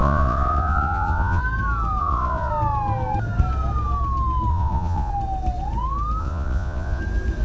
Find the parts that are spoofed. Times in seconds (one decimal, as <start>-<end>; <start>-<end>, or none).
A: 0.0-1.4; 2.0-2.5; 4.5-5.1; 6.2-7.0